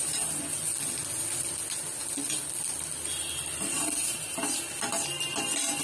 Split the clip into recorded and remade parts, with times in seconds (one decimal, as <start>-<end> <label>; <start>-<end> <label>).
0.0-5.8 recorded